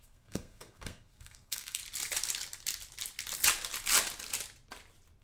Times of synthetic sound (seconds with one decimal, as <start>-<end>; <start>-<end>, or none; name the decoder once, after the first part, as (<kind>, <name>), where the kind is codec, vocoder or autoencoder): 0.0-1.8 (codec, SNAC)